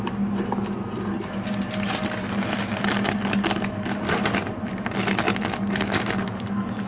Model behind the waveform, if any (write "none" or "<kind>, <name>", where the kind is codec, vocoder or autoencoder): none